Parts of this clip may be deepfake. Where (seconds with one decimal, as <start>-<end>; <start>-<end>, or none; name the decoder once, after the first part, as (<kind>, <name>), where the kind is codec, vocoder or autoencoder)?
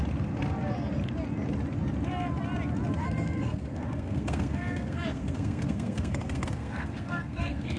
3.0-7.8 (codec, SNAC)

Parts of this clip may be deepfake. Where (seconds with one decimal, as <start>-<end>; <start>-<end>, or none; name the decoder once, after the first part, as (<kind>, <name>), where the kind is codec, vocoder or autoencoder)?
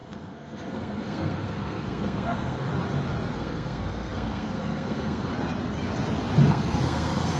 0.0-2.7 (codec, SNAC); 3.3-5.3; 6.5-7.4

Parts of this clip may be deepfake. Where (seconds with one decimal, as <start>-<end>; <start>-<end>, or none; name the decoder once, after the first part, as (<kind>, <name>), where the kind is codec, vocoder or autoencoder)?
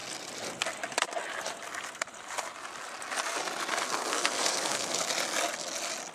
3.7-5.1 (codec, SNAC)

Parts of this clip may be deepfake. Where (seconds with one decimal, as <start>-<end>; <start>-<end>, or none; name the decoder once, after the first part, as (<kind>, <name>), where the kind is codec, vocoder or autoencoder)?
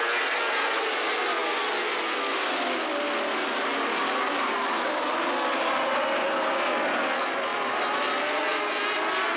none